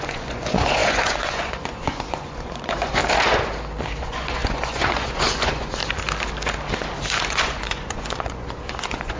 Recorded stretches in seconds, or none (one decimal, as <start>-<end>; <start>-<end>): 3.0-4.0; 5.8-7.2